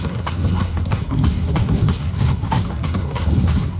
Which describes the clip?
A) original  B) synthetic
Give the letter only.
B